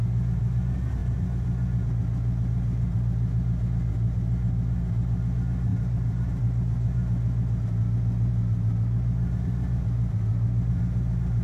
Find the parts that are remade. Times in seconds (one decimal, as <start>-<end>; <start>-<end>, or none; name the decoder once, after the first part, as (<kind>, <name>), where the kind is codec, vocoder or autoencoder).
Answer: 5.7-6.4 (vocoder, BigVGAN v2)